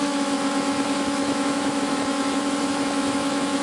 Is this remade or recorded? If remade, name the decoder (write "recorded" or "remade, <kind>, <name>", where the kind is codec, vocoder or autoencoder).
remade, autoencoder, DAC-VAE